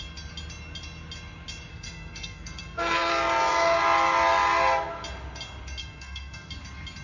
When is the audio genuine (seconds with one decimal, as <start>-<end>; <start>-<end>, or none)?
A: 0.0-1.7; 3.1-5.8; 6.5-7.0